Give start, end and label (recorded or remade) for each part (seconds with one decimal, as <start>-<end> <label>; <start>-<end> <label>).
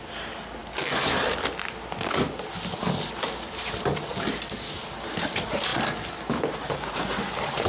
0.0-7.7 recorded